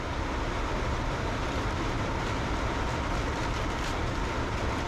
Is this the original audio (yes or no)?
no